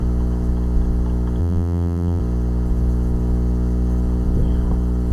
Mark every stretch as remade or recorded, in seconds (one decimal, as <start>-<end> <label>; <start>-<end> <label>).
0.0-1.4 recorded; 1.4-2.2 remade; 2.2-5.1 recorded